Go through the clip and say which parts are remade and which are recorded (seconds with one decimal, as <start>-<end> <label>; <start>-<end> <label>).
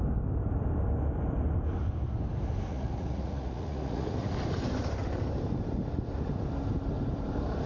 0.0-2.7 recorded; 2.7-4.3 remade; 4.3-7.7 recorded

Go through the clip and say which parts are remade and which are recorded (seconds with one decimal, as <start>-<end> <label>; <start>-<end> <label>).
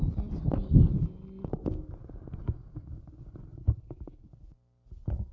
0.0-3.5 recorded; 3.5-4.2 remade; 4.2-5.3 recorded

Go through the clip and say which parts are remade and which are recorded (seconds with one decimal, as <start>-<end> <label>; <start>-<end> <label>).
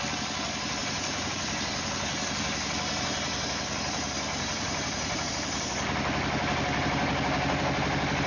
0.0-0.8 recorded; 0.8-1.5 remade; 1.5-4.3 recorded; 4.3-5.3 remade; 5.3-8.3 recorded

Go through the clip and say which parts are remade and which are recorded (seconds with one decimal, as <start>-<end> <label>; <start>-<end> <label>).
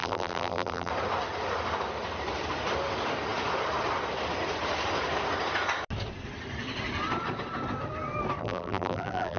0.0-0.9 remade; 0.9-8.4 recorded; 8.4-9.4 remade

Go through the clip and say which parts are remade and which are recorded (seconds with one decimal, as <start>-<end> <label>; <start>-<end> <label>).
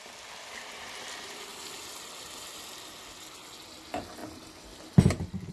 0.0-5.5 recorded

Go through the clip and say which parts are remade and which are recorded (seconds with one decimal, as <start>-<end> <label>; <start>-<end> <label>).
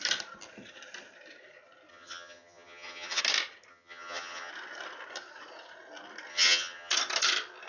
0.0-1.9 recorded; 1.9-3.2 remade; 3.2-3.7 recorded; 3.7-4.5 remade; 4.5-6.3 recorded; 6.3-6.9 remade; 6.9-7.7 recorded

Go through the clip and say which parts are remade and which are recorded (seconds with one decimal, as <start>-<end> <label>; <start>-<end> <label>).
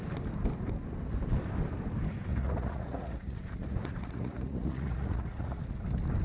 0.0-2.3 recorded; 2.3-5.6 remade; 5.6-6.2 recorded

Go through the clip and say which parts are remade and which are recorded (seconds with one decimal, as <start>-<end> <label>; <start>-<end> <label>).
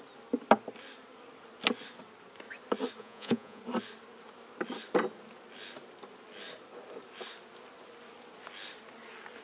0.0-3.0 recorded; 3.0-3.6 remade; 3.6-9.4 recorded